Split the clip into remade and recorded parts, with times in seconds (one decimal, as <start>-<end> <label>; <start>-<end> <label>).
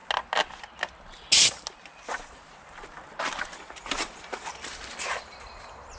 0.0-6.0 recorded